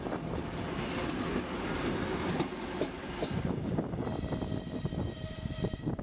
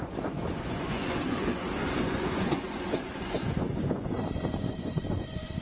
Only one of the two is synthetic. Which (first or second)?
second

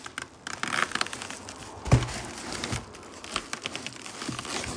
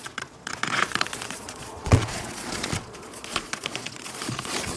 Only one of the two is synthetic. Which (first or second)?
second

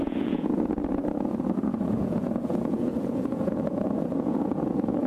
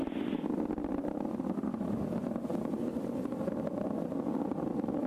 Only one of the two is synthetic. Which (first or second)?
first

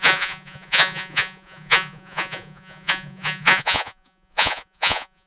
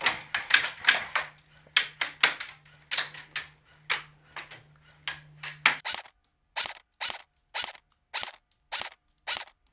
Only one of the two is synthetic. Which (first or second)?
first